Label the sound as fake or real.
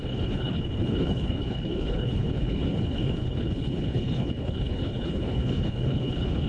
fake